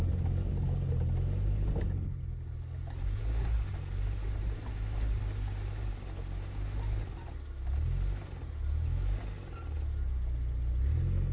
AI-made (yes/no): no